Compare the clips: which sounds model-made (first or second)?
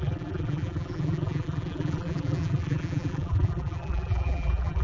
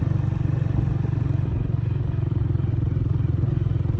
first